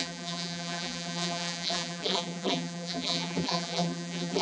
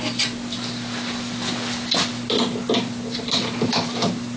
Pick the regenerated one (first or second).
first